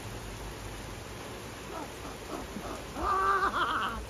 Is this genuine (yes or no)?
yes